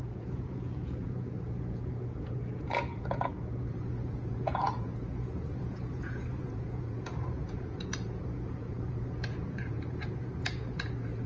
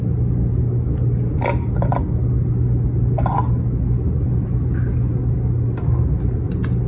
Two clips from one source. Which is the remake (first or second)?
first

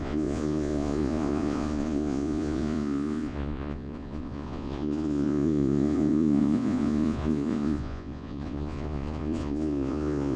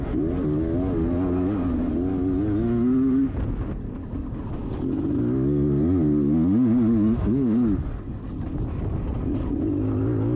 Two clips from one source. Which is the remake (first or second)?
first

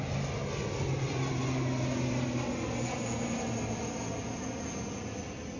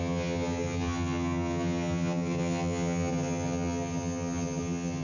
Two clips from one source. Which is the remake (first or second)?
second